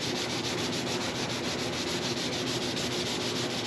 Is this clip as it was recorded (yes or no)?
yes